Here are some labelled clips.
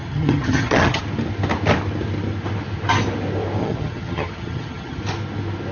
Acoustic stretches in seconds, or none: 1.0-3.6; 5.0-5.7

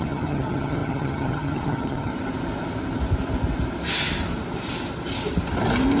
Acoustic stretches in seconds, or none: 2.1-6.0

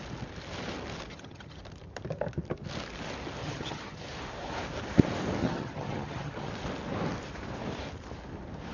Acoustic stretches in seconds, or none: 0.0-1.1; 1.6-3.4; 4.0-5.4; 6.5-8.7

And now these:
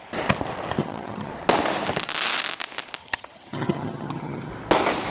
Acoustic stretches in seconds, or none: 0.0-0.8; 1.3-3.0; 4.5-5.1

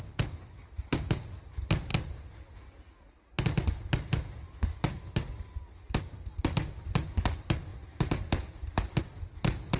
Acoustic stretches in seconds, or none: 0.0-9.8

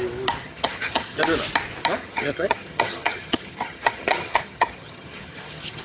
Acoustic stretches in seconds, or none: 0.0-0.4; 1.2-2.0

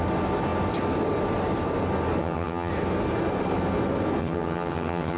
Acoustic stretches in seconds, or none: 0.0-2.2; 2.7-4.2

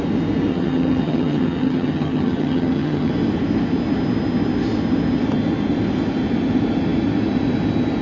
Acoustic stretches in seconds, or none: 0.0-0.5; 3.1-8.0